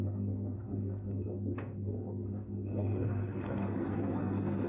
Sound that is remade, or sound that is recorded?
remade